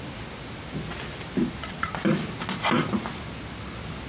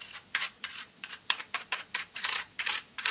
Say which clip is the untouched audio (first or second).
first